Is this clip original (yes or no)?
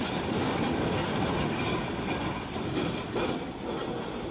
yes